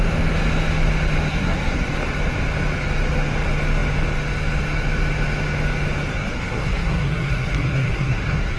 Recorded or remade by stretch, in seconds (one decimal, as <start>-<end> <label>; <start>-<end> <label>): 0.0-1.3 recorded; 1.3-1.9 remade; 1.9-6.1 recorded; 6.1-8.6 remade